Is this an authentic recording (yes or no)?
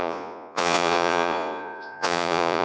no